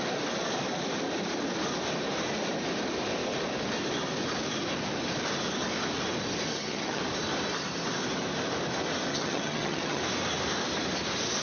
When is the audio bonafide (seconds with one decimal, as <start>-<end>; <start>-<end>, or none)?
0.0-6.5; 7.0-9.1; 10.0-11.4